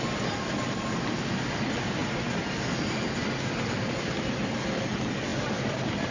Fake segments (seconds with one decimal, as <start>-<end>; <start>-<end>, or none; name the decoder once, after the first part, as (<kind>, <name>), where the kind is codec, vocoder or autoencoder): none